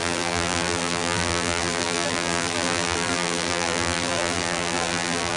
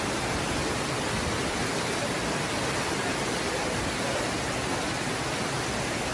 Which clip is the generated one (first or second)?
first